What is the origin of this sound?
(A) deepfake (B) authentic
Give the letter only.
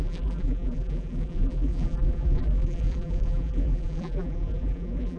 A